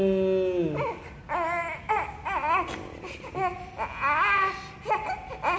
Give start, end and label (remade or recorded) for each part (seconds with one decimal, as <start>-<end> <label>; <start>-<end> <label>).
0.0-5.6 recorded